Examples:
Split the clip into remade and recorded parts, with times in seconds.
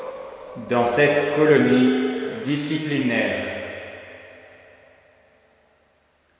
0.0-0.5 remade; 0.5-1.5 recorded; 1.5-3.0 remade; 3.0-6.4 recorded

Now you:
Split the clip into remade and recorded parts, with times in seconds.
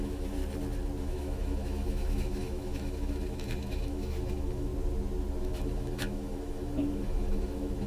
0.0-0.4 remade; 0.4-1.0 recorded; 1.0-4.7 remade; 4.7-5.4 recorded; 5.4-7.9 remade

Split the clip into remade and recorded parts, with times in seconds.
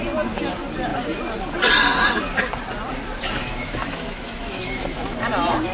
0.0-3.4 recorded; 3.4-5.0 remade; 5.0-5.7 recorded